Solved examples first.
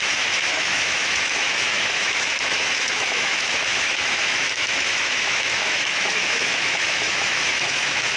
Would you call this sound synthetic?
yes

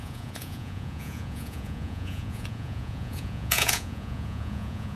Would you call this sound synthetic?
yes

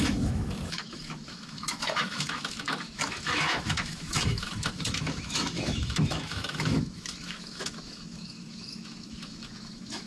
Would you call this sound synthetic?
yes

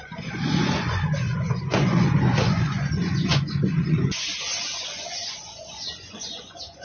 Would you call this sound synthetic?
yes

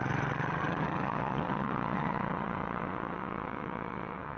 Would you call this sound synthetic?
yes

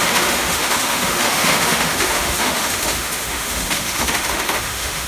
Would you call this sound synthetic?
yes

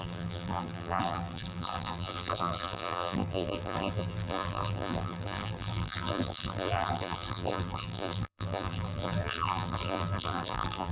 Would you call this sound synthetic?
yes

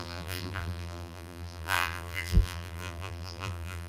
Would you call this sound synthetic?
yes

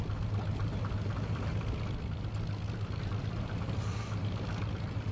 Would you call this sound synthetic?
no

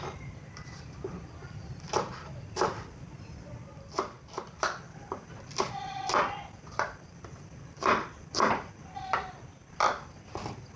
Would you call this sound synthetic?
yes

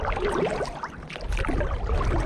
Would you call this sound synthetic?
no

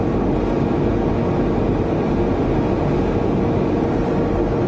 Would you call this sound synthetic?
no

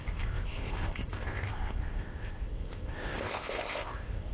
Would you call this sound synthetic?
yes